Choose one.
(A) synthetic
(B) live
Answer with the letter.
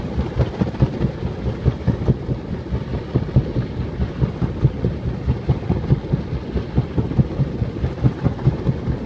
B